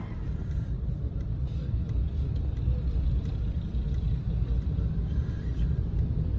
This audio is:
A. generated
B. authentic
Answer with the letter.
A